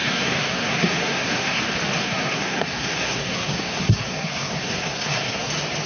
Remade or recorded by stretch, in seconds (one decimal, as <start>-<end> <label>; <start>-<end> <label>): 0.0-1.6 remade; 1.6-2.0 recorded; 2.0-5.5 remade; 5.5-5.9 recorded